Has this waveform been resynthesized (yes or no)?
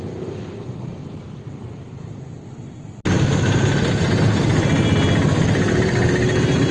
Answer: no